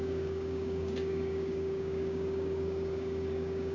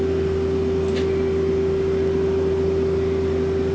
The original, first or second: second